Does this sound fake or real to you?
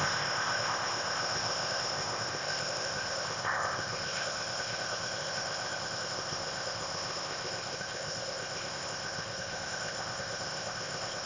fake